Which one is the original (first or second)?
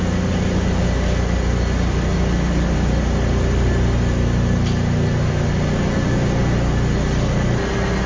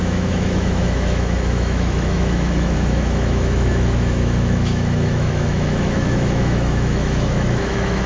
first